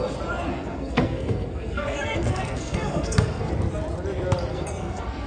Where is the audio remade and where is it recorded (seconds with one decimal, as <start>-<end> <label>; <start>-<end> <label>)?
0.0-0.5 recorded; 0.5-3.5 remade; 3.5-4.5 recorded; 4.5-5.3 remade